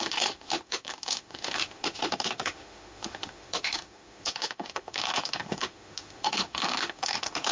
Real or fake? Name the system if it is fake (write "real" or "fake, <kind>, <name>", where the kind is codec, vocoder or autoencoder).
fake, autoencoder, DAC-VAE